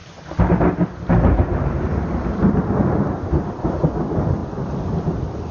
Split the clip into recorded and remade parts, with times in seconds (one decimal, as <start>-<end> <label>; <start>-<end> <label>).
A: 0.0-5.5 recorded